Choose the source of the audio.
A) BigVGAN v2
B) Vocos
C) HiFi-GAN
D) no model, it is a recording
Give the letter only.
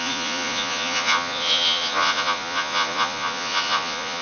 B